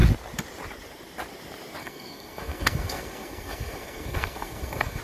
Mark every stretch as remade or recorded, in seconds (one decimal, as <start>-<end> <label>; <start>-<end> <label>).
0.0-1.8 recorded; 1.8-5.0 remade